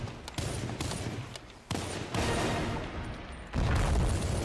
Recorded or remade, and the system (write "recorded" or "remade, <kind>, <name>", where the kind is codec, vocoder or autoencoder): recorded